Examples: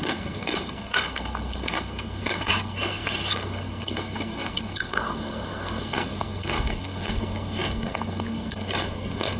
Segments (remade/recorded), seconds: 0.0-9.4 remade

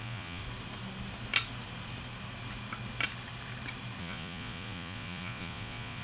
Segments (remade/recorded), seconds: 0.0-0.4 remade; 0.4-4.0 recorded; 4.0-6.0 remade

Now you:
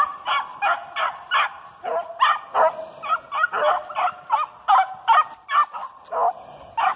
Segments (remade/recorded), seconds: 0.0-7.0 recorded

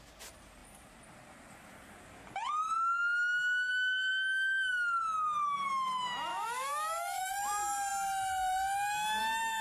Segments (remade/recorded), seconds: 0.0-6.3 recorded; 6.3-7.3 remade; 7.3-9.6 recorded

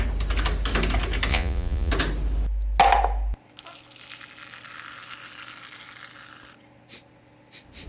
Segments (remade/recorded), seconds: 0.0-1.3 recorded; 1.3-1.9 remade; 1.9-7.9 recorded

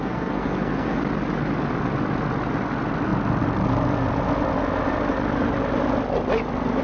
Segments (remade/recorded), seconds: 0.0-1.0 remade; 1.0-6.8 recorded

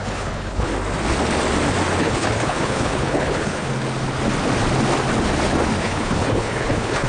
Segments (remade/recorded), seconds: 0.0-0.7 remade; 0.7-2.0 recorded; 2.0-3.7 remade; 3.7-5.8 recorded; 5.8-7.1 remade